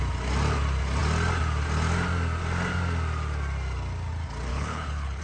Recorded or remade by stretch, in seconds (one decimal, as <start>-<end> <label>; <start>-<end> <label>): 0.0-4.5 recorded; 4.5-5.2 remade